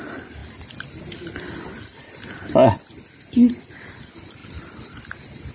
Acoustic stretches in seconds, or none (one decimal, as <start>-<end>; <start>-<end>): 0.0-5.5